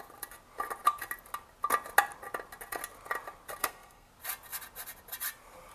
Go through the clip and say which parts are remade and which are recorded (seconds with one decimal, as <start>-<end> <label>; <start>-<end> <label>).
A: 0.0-3.6 recorded; 3.6-4.1 remade; 4.1-5.7 recorded